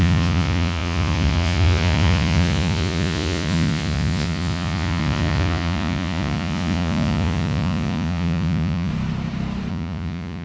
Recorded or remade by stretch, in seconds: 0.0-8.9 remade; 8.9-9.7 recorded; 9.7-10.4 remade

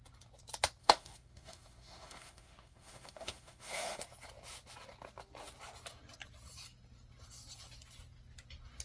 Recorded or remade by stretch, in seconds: 0.0-0.8 recorded; 0.8-4.0 remade; 4.0-8.8 recorded

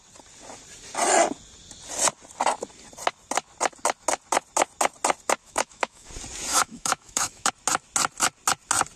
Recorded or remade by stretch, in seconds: 0.0-5.4 recorded; 5.4-6.1 remade; 6.1-6.5 recorded; 6.5-7.5 remade; 7.5-9.0 recorded

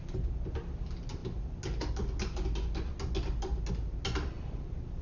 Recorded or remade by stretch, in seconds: 0.0-5.0 recorded

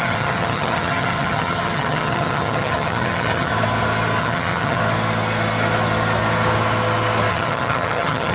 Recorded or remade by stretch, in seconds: 0.0-3.5 remade; 3.5-4.2 recorded; 4.2-4.8 remade; 4.8-7.3 recorded; 7.3-8.3 remade

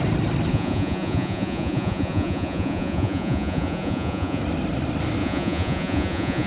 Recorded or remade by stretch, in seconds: 0.0-0.5 recorded; 0.5-4.4 remade; 4.4-5.2 recorded; 5.2-6.5 remade